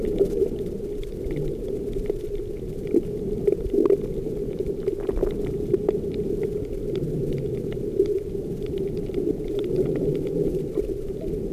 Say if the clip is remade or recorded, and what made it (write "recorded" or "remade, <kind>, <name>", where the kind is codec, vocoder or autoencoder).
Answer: remade, vocoder, BigVGAN v2